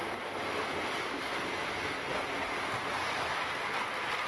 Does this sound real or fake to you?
real